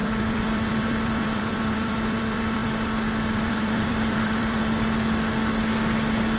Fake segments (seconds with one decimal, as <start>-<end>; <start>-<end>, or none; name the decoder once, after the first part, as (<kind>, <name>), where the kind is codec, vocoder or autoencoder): 0.0-4.6 (vocoder, BigVGAN v2)

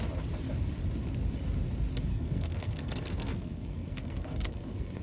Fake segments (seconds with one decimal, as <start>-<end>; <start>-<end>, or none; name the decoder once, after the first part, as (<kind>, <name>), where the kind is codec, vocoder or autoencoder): 2.1-5.0 (codec, SNAC)

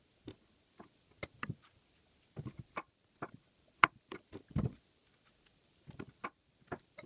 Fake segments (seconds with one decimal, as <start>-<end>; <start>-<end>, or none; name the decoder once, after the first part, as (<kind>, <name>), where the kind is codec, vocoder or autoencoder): none

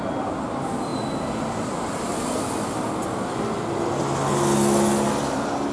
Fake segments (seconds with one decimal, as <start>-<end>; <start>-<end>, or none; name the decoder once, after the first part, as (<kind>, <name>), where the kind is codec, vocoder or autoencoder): none

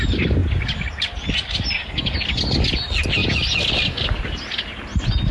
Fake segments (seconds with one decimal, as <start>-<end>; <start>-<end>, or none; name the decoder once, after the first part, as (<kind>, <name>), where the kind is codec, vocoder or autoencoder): none

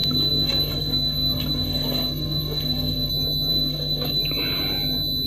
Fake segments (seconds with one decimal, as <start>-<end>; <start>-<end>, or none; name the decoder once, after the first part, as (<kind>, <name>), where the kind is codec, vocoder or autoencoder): 0.0-3.1 (codec, SNAC); 3.5-4.2